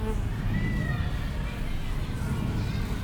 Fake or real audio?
real